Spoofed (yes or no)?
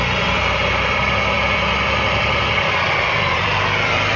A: yes